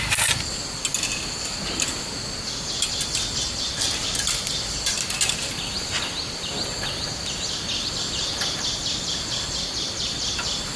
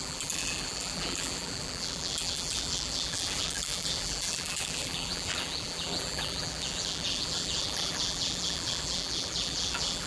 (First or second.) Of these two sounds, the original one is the first